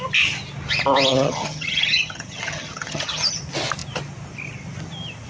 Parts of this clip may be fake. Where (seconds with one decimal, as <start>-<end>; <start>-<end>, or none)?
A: 1.1-3.4